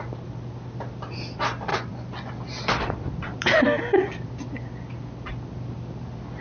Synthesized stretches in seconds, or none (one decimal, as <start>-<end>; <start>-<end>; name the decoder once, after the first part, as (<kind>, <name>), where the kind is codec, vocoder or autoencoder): 1.7-2.3 (vocoder, Vocos)